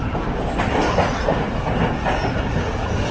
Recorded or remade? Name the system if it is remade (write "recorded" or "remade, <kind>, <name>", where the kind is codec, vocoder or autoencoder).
recorded